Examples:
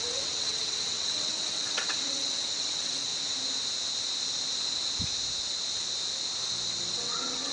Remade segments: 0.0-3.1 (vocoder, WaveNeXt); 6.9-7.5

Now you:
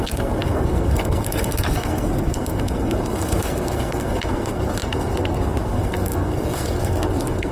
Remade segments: 0.0-7.5 (codec, SNAC)

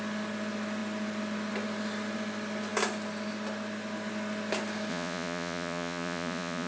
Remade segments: 4.9-6.7 (vocoder, Vocos)

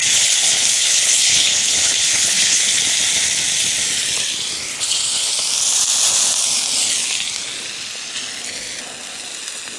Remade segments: 0.0-2.8 (codec, HILCodec); 4.7-5.3